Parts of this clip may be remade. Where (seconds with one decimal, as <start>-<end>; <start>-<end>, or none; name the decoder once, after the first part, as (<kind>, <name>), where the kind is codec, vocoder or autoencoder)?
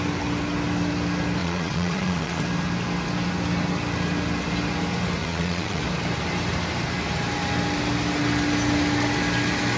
1.4-2.4 (vocoder, Vocos); 5.2-5.8